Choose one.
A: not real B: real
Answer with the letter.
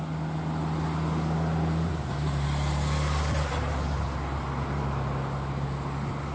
B